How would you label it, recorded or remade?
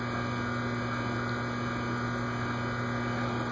recorded